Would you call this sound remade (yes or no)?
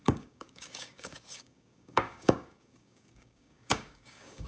yes